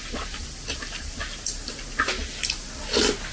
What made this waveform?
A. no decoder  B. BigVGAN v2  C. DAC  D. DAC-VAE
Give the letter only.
A